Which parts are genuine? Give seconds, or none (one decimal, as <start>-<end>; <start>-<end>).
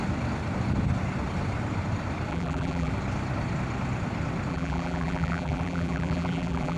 0.0-2.3; 2.9-4.5